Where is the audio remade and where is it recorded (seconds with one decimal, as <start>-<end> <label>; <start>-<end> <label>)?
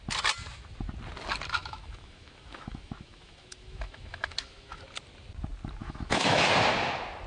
0.0-1.6 recorded; 1.6-4.8 remade; 4.8-5.8 recorded; 5.8-6.5 remade; 6.5-7.3 recorded